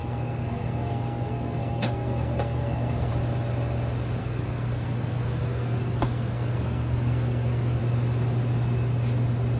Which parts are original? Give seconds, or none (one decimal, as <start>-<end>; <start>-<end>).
3.1-4.2; 7.8-9.6